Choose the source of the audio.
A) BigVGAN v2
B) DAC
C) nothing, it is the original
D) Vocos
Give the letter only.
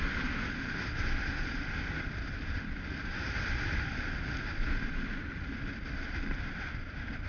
C